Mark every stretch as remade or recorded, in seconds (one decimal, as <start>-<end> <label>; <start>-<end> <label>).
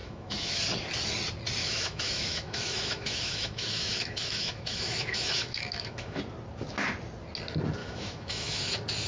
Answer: 0.0-0.6 remade; 0.6-1.6 recorded; 1.6-6.2 remade; 6.2-7.8 recorded; 7.8-8.7 remade; 8.7-9.1 recorded